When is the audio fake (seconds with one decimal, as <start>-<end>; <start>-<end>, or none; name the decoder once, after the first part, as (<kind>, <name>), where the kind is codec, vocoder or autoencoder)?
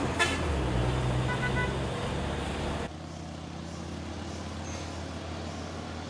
none